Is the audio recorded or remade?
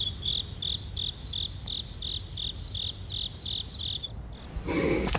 recorded